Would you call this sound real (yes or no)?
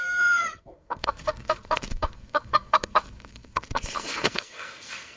no